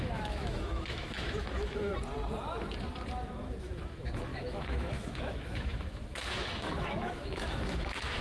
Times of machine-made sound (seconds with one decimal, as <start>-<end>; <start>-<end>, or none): 0.0-1.9; 3.6-8.2